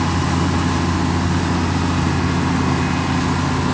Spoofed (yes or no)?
no